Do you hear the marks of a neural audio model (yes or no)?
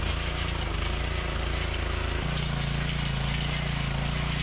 no